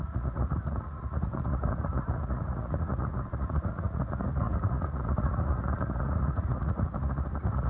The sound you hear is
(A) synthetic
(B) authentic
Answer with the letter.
A